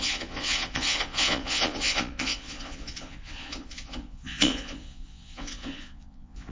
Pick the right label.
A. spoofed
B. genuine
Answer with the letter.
A